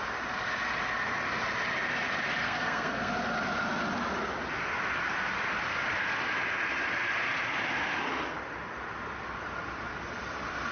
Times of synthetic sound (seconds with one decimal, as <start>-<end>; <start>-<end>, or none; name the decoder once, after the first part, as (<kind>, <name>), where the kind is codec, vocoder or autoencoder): 2.4-3.1 (codec, SNAC)